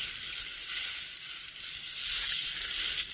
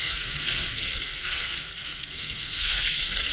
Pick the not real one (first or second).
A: second